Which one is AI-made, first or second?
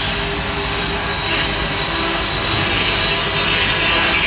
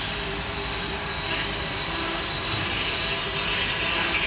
second